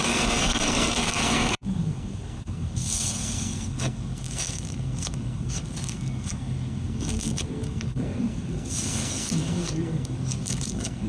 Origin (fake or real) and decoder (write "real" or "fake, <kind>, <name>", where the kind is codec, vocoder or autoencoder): fake, codec, SNAC